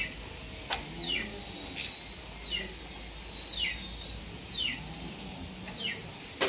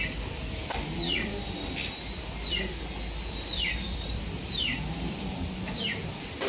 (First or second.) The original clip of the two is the first